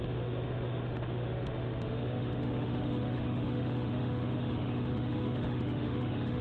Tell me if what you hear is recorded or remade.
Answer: remade